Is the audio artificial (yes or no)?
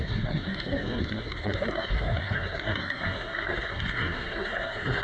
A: yes